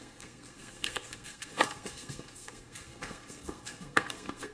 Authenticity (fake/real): fake